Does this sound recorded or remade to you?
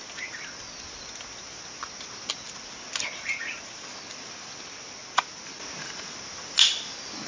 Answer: recorded